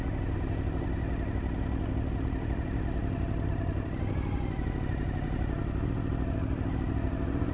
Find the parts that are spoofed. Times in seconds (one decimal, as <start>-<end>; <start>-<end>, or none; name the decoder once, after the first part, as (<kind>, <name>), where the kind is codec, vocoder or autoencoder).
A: 3.0-4.6 (vocoder, BigVGAN v2); 5.6-6.1